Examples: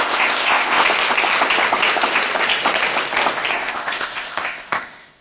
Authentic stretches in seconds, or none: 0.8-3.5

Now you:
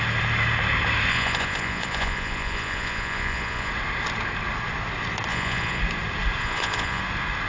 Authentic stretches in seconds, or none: 0.0-1.1; 3.7-5.3; 5.8-6.4; 7.0-7.5

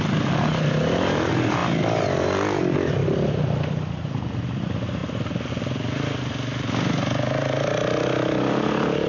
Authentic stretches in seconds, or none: 0.0-9.1

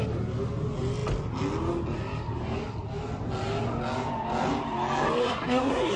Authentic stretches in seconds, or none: 0.0-5.2

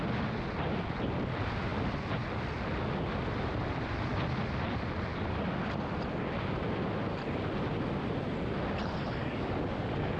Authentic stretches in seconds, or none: 0.0-9.2

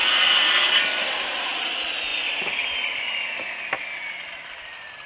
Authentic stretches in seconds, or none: 0.7-5.1

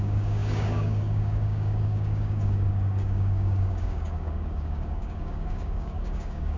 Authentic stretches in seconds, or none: none